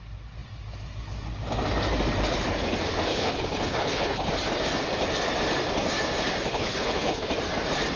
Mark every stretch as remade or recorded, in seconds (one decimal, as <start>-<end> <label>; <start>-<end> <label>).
0.0-3.1 recorded; 3.1-4.3 remade; 4.3-6.5 recorded; 6.5-7.3 remade; 7.3-8.0 recorded